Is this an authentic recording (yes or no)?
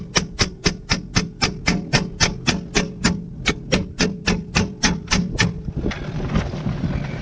yes